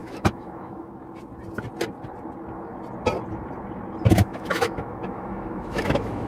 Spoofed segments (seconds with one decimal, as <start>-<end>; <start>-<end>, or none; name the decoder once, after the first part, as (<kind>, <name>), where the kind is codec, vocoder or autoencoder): 0.0-0.9 (autoencoder, DAC-VAE); 4.1-6.3